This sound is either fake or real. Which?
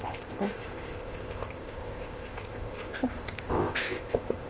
fake